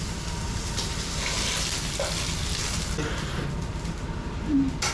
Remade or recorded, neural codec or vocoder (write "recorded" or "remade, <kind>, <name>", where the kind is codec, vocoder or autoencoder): recorded